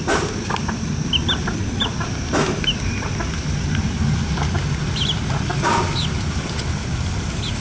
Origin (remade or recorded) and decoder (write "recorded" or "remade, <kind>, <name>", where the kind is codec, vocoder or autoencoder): recorded